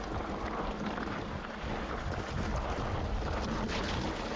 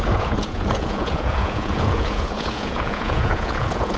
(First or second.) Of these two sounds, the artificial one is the second